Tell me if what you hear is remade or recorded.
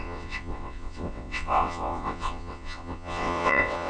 remade